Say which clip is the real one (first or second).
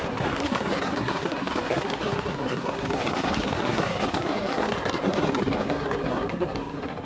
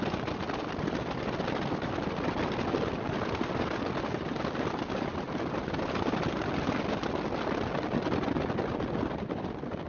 second